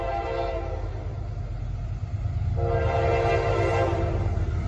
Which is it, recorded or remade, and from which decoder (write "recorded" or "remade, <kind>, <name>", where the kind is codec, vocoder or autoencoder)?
recorded